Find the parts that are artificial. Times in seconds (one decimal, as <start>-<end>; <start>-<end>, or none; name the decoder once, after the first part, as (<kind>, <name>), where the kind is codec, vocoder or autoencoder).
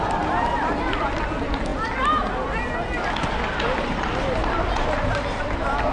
none